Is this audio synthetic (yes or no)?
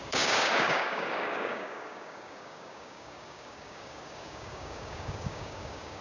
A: yes